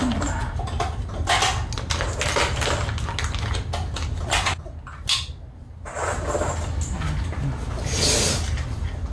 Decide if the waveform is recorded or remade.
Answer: recorded